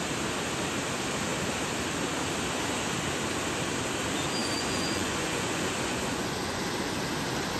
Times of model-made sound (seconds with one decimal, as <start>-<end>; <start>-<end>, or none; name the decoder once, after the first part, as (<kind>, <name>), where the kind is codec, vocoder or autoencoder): 4.4-6.6 (vocoder, Vocos)